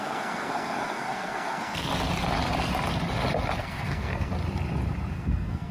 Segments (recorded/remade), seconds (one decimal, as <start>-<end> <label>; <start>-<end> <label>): 0.0-1.9 remade; 1.9-3.6 recorded; 3.6-4.3 remade; 4.3-5.1 recorded; 5.1-5.7 remade